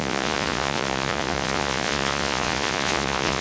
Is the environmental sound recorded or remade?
remade